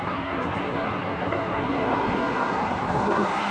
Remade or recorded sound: remade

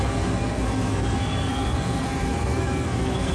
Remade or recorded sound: remade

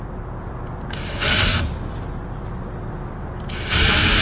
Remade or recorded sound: recorded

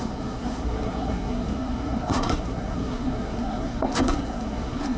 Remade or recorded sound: remade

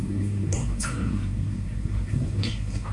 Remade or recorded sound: remade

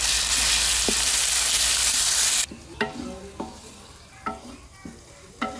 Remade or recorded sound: recorded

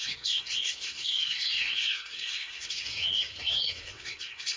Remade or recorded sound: remade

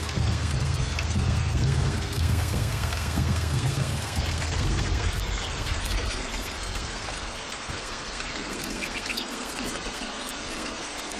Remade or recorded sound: remade